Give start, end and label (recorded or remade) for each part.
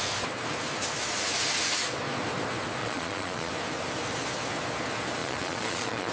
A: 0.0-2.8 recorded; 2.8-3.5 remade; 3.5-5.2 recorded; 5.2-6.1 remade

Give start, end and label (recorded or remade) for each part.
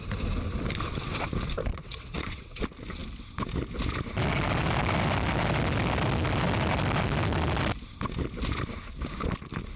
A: 0.0-1.7 recorded; 1.7-2.6 remade; 2.6-9.8 recorded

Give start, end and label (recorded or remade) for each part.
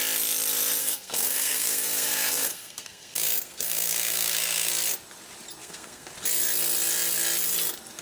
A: 0.0-0.8 recorded; 0.8-4.7 remade; 4.7-5.6 recorded; 5.6-6.1 remade; 6.1-8.0 recorded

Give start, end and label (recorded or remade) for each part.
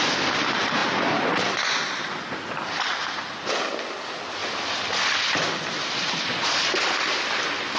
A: 0.0-7.8 recorded